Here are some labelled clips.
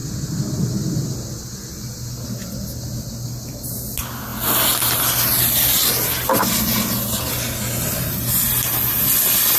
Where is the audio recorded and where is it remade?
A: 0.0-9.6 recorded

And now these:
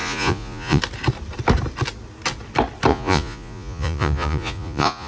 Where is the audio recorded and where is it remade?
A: 0.0-0.8 remade; 0.8-2.9 recorded; 2.9-5.1 remade

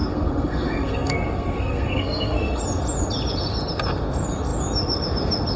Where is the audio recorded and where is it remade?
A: 0.0-2.6 remade; 2.6-5.6 recorded